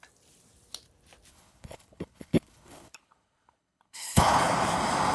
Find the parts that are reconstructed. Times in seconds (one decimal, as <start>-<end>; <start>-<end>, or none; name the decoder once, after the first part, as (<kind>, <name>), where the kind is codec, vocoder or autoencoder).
1.3-4.4 (codec, HILCodec)